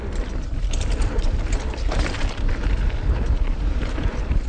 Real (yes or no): no